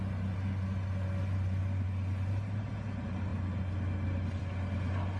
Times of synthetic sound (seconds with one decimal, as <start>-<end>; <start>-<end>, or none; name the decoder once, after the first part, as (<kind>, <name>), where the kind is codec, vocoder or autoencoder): none